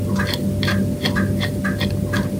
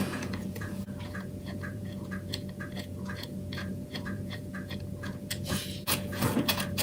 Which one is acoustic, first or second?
first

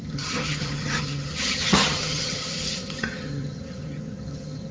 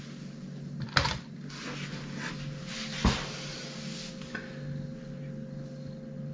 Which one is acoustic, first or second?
second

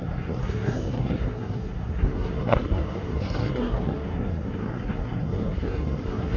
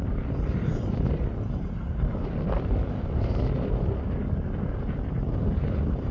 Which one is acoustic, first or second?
second